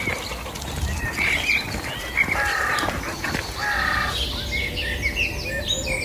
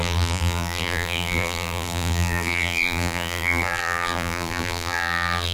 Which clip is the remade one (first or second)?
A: second